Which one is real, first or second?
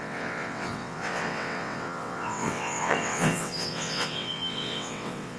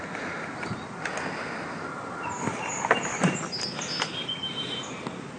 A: second